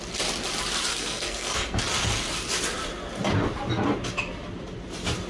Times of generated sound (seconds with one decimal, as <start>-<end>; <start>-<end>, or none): 0.9-1.8